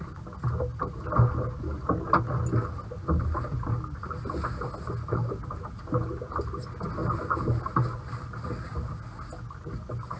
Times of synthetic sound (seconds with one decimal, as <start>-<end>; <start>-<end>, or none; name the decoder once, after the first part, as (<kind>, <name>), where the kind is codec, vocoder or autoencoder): none